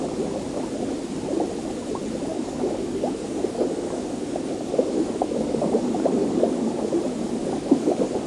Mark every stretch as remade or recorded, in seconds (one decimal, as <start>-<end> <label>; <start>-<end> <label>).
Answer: 0.0-2.3 recorded; 2.3-7.0 remade; 7.0-7.4 recorded; 7.4-8.3 remade

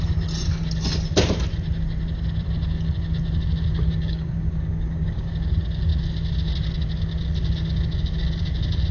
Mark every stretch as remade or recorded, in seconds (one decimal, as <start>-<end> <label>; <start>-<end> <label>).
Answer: 0.0-3.7 recorded; 3.7-5.3 remade; 5.3-8.9 recorded

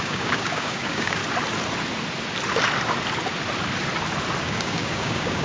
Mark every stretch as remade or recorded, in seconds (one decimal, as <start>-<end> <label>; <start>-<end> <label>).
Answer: 0.0-1.2 remade; 1.2-4.4 recorded; 4.4-5.4 remade

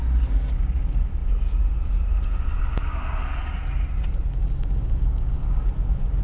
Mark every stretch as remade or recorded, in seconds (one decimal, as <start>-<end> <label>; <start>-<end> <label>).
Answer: 0.0-4.4 recorded; 4.4-5.6 remade; 5.6-6.2 recorded

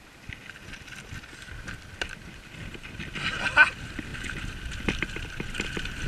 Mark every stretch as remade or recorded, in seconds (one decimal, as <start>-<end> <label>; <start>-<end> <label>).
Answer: 0.0-6.1 recorded